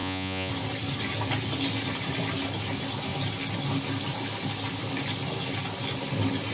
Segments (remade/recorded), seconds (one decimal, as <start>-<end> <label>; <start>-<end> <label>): 0.0-0.5 remade; 0.5-6.5 recorded